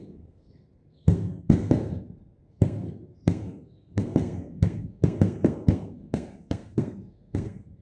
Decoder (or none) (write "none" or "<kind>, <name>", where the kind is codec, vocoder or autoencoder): codec, SNAC